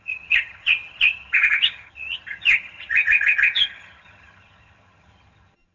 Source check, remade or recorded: remade